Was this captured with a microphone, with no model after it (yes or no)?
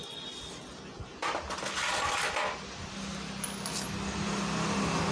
yes